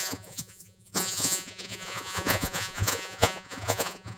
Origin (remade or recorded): remade